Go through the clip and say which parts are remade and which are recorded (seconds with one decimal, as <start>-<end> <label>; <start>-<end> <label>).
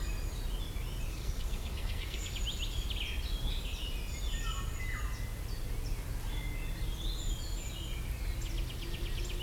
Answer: 0.0-1.1 recorded; 1.1-2.3 remade; 2.3-9.4 recorded